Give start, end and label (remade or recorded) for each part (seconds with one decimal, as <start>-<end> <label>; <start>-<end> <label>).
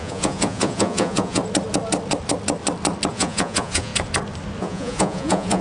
0.0-1.4 remade; 1.4-3.1 recorded; 3.1-3.9 remade; 3.9-4.6 recorded; 4.6-5.6 remade